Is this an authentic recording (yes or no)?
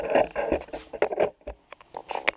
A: yes